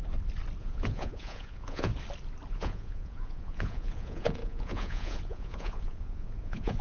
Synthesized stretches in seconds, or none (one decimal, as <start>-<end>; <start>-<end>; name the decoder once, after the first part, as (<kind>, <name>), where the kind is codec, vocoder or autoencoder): 0.6-1.9 (vocoder, Vocos); 2.5-6.8